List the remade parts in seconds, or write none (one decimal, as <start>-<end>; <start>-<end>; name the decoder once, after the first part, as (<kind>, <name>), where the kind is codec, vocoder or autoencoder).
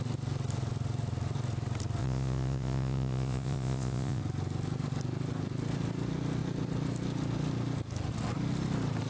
2.0-4.2 (vocoder, Vocos)